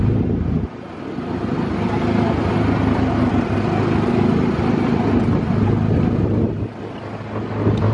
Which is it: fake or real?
real